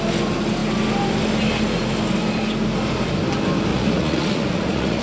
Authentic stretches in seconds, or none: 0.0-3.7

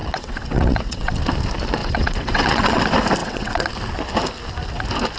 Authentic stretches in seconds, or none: 1.1-1.8; 2.8-3.2; 3.7-5.2

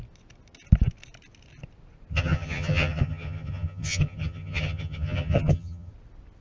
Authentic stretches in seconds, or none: 0.0-2.1; 5.9-6.4

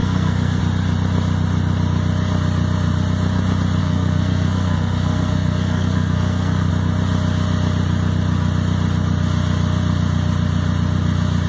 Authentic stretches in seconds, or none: 0.6-3.8; 6.7-11.5